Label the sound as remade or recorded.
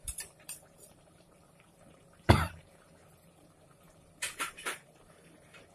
remade